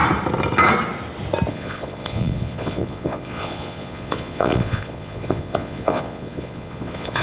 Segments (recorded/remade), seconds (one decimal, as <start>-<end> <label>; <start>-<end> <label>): 0.0-1.5 recorded; 1.5-7.2 remade